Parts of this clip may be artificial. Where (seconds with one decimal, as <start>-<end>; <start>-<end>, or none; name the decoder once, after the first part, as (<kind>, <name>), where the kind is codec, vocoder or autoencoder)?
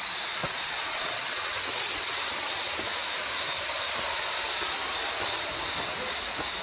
0.4-2.7 (vocoder, WaveNeXt)